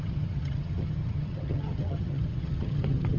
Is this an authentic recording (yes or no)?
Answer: no